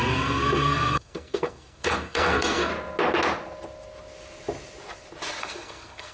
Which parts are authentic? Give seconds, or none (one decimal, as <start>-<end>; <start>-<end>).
2.7-5.4